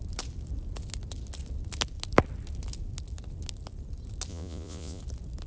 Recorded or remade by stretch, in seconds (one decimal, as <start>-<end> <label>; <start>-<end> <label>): 0.0-4.3 recorded; 4.3-5.0 remade; 5.0-5.5 recorded